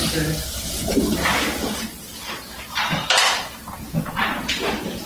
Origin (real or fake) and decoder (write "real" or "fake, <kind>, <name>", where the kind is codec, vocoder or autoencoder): real